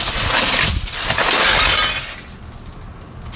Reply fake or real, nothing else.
real